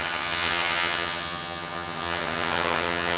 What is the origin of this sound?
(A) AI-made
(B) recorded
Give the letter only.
A